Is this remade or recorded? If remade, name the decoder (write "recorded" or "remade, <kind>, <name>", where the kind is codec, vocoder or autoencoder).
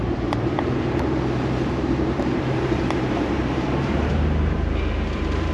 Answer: remade, vocoder, BigVGAN v2